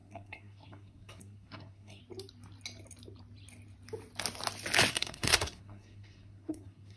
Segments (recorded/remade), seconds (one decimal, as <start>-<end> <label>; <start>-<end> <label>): 0.0-2.0 remade; 2.0-4.9 recorded; 4.9-7.0 remade